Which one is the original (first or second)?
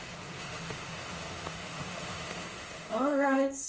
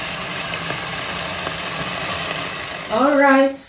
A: second